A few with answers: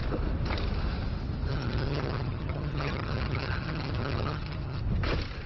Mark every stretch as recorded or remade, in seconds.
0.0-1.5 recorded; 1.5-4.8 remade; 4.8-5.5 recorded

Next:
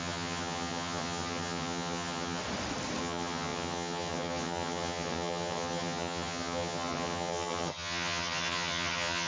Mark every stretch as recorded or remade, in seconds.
0.0-2.4 remade; 2.4-3.0 recorded; 3.0-9.3 remade

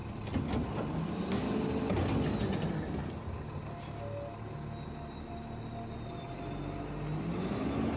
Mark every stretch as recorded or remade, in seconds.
0.0-8.0 recorded

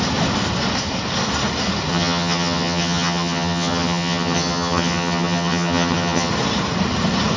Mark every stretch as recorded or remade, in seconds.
0.0-1.9 recorded; 1.9-6.3 remade; 6.3-7.4 recorded

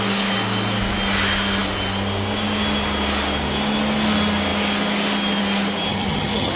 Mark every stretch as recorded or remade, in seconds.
0.0-5.9 recorded; 5.9-6.6 remade

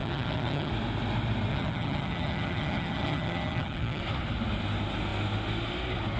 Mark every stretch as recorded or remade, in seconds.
0.0-0.7 remade; 0.7-1.5 recorded; 1.5-4.0 remade; 4.0-6.2 recorded